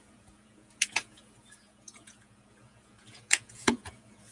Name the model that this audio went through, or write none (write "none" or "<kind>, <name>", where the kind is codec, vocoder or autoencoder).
vocoder, Vocos